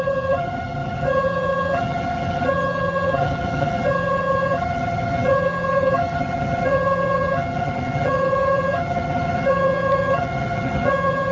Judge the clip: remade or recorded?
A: remade